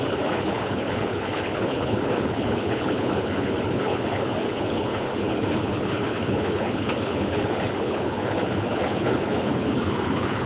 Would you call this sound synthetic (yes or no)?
yes